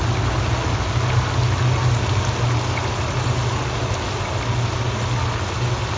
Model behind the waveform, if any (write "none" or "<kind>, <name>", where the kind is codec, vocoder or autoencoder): none